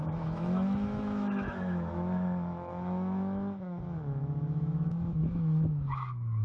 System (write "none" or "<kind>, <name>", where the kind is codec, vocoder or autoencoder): autoencoder, DAC-VAE